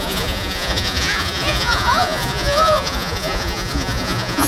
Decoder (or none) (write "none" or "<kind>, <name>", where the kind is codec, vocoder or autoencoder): vocoder, Vocos